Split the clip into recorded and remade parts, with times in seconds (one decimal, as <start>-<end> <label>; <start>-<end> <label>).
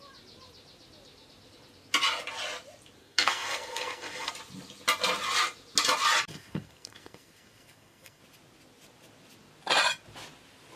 0.0-3.0 recorded; 3.0-4.3 remade; 4.3-6.3 recorded; 6.3-8.2 remade; 8.2-10.8 recorded